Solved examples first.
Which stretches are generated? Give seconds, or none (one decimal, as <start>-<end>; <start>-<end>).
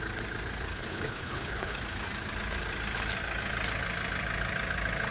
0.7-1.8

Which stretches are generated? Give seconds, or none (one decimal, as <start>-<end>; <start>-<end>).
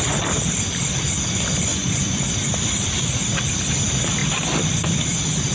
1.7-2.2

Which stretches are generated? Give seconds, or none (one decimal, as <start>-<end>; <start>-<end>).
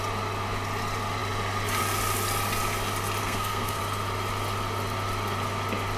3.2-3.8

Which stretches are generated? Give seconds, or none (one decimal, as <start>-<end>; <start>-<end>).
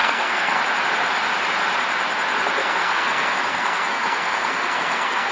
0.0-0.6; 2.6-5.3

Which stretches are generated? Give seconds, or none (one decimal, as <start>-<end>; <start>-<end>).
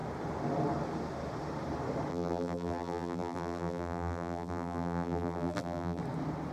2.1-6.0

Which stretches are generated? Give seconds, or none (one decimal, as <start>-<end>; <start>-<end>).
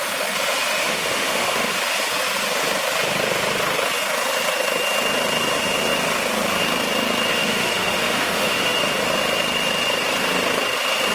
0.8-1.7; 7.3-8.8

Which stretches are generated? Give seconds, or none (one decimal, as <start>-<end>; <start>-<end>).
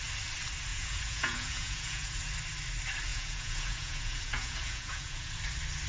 0.7-2.3; 3.1-5.3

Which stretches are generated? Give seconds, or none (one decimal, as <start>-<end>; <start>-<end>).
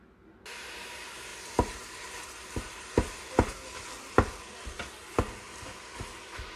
1.3-4.1